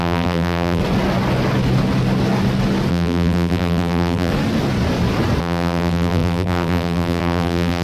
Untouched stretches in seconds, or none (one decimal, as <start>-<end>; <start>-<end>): 0.8-2.9; 4.3-5.4